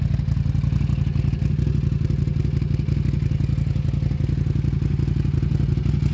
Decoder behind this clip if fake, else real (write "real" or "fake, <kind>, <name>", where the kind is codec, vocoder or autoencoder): real